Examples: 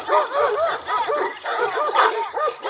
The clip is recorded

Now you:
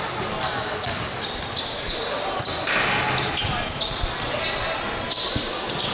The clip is recorded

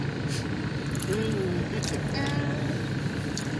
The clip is recorded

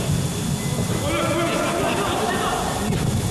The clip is recorded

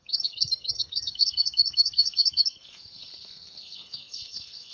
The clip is remade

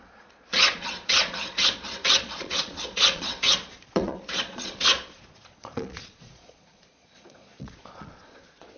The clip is remade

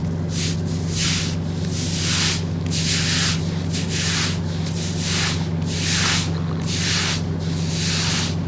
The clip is recorded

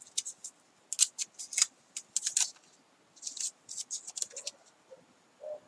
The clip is recorded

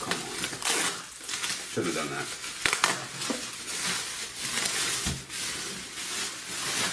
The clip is recorded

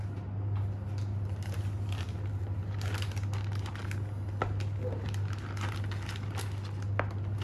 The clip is recorded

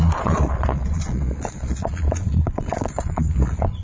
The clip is remade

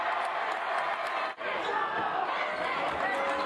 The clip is recorded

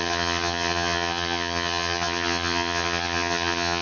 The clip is remade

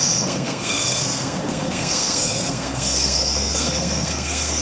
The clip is remade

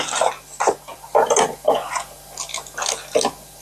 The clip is recorded